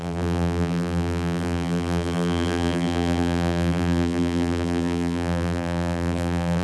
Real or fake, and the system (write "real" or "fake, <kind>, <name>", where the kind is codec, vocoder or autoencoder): fake, vocoder, BigVGAN v2